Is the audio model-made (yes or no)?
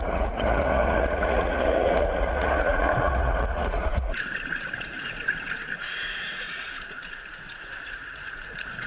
yes